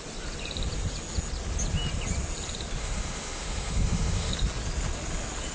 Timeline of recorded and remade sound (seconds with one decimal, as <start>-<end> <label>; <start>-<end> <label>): 0.0-2.8 recorded; 2.8-4.3 remade; 4.3-5.5 recorded